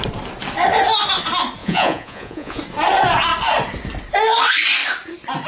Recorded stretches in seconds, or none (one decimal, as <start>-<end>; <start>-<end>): 0.0-1.6; 2.6-5.5